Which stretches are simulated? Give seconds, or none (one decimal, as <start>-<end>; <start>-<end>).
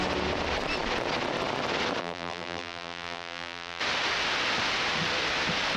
2.0-3.8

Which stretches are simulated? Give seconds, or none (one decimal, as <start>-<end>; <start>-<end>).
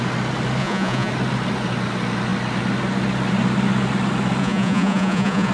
0.6-1.1; 4.4-5.5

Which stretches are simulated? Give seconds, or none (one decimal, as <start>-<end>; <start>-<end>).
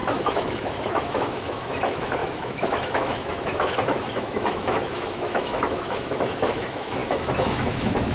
0.0-8.1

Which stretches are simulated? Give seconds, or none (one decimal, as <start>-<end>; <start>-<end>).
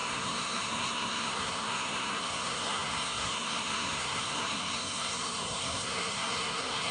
0.0-6.9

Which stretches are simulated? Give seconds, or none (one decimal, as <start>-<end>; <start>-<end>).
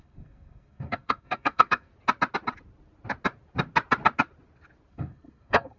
0.0-1.9; 4.9-5.8